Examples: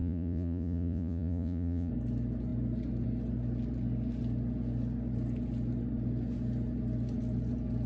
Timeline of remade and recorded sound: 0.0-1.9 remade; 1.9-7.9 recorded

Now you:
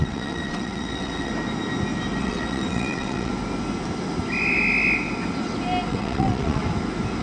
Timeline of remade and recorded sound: 0.0-1.3 remade; 1.3-2.2 recorded; 2.2-3.3 remade; 3.3-5.9 recorded; 5.9-6.6 remade; 6.6-7.2 recorded

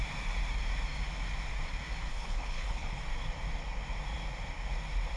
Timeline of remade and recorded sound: 0.0-2.1 recorded; 2.1-3.0 remade; 3.0-5.2 recorded

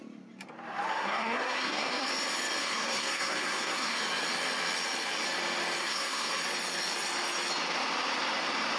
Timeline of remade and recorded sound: 0.0-0.9 recorded; 0.9-2.1 remade; 2.1-2.6 recorded; 2.6-4.0 remade; 4.0-5.8 recorded; 5.8-6.3 remade; 6.3-8.8 recorded

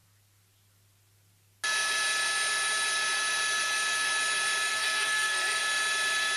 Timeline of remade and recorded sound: 0.0-4.7 recorded; 4.7-5.6 remade; 5.6-6.4 recorded

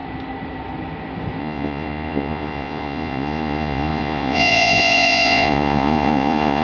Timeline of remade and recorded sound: 0.0-1.4 recorded; 1.4-6.6 remade

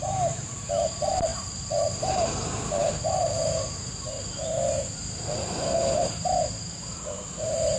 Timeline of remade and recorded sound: 0.0-7.8 recorded

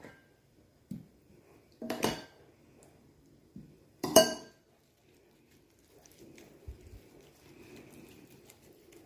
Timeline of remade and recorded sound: 0.0-4.2 remade; 4.2-5.9 recorded; 5.9-9.1 remade